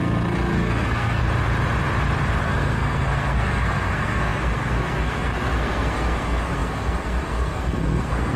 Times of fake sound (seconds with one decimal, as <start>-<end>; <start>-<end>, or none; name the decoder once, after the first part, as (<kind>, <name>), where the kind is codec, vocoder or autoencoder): 0.0-1.2 (codec, SNAC); 2.4-8.4